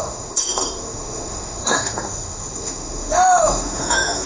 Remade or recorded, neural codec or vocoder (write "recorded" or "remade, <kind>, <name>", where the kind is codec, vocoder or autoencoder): remade, autoencoder, DAC-VAE